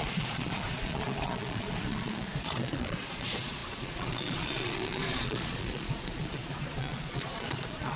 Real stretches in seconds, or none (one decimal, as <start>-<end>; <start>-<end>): none